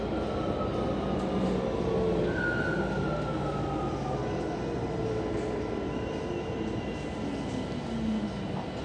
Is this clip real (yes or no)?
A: yes